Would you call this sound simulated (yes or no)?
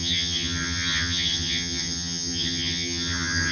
yes